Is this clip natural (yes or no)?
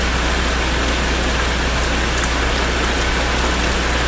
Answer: yes